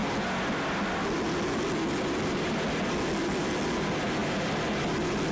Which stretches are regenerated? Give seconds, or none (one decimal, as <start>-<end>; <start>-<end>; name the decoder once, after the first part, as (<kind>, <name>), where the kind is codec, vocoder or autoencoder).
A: none